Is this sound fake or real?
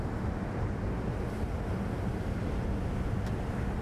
real